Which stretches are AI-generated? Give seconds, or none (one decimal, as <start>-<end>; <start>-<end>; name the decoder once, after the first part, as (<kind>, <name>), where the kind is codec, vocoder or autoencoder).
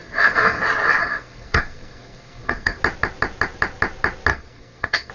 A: 0.0-0.6 (codec, SNAC); 1.0-2.8; 4.3-5.1